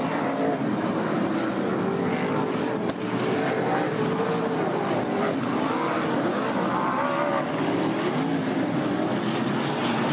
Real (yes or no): yes